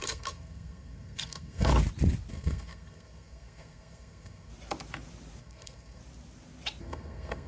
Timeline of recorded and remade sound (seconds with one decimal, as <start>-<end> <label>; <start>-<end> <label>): 0.0-1.7 remade; 1.7-2.3 recorded; 2.3-4.5 remade; 4.5-5.4 recorded; 5.4-6.0 remade; 6.0-6.8 recorded; 6.8-7.5 remade